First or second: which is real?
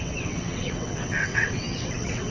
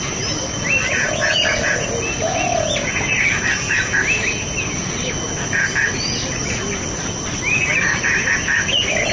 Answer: second